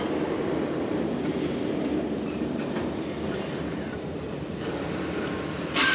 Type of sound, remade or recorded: remade